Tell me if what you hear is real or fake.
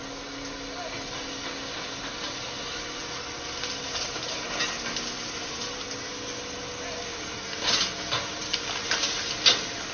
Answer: real